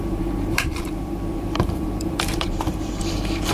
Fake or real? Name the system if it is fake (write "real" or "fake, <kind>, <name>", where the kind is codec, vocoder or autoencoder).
fake, vocoder, BigVGAN v2